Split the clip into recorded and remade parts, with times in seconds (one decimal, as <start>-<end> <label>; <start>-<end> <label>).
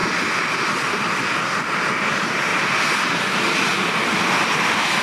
0.0-3.7 recorded; 3.7-5.0 remade